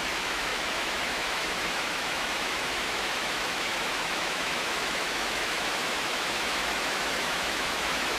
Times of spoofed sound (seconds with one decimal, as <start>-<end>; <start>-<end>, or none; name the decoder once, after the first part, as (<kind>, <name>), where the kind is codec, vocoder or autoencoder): 0.0-8.2 (autoencoder, DAC-VAE)